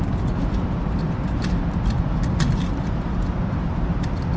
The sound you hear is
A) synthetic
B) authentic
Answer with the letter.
B